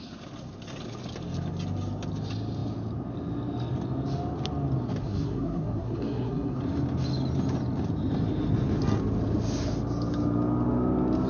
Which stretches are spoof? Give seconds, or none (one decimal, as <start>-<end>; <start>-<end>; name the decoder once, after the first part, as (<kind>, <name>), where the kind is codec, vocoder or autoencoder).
5.0-6.6 (codec, SNAC)